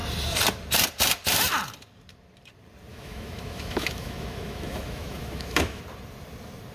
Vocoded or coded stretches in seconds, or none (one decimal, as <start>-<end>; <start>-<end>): 2.9-5.8